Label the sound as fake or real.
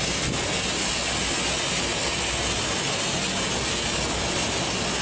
real